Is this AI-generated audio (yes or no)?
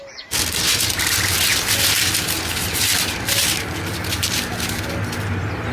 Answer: no